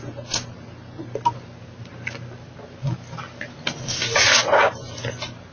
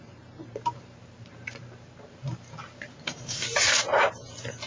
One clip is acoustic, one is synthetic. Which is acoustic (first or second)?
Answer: first